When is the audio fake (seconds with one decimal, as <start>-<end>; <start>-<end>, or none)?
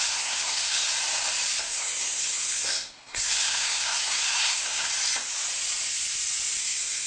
0.0-0.9; 1.6-4.9; 6.6-7.1